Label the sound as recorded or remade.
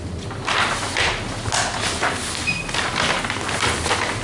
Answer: recorded